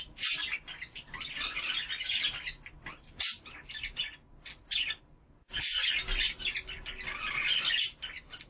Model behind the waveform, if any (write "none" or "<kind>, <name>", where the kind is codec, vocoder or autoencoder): none